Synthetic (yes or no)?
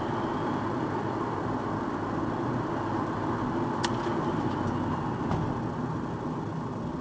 no